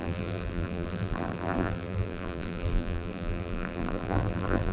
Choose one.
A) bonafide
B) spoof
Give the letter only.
B